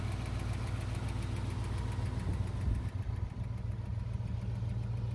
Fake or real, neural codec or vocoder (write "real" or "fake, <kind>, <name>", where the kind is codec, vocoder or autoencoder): real